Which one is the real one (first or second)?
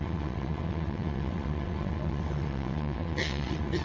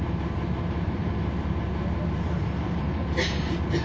second